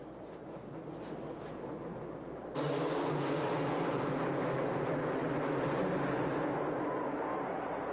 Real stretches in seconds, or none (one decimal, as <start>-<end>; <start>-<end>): 0.0-7.9